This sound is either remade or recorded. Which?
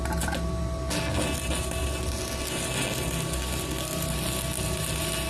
recorded